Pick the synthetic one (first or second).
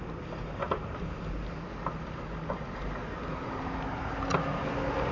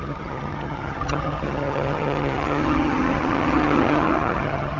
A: second